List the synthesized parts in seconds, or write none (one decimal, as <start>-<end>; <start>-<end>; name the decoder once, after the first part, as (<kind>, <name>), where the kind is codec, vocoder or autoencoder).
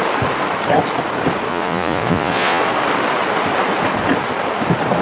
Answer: 1.5-2.6 (vocoder, Vocos)